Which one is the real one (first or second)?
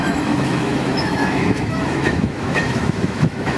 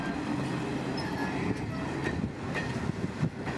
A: second